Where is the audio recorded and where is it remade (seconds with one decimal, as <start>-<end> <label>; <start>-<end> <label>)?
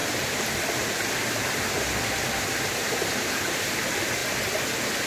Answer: 0.0-2.7 recorded; 2.7-4.2 remade; 4.2-5.1 recorded